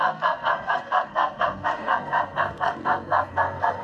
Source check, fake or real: fake